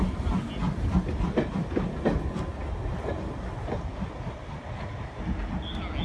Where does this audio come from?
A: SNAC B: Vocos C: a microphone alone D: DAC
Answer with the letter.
C